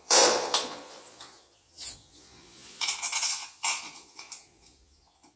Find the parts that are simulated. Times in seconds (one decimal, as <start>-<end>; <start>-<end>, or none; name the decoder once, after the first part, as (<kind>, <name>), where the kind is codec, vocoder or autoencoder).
0.0-5.4 (vocoder, Vocos)